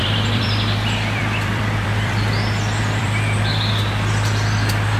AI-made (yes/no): yes